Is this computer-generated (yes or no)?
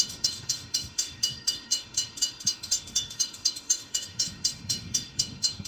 yes